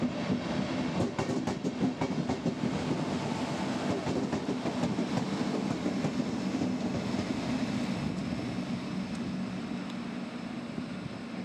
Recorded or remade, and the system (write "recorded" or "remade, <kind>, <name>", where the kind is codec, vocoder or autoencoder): recorded